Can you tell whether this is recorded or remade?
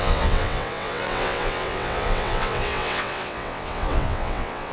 remade